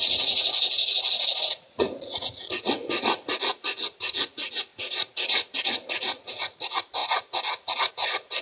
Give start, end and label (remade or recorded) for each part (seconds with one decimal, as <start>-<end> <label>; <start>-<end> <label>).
0.0-8.4 remade